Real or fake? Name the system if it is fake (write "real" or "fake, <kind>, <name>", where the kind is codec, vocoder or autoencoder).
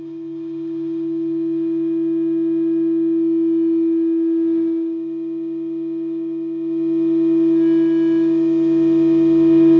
real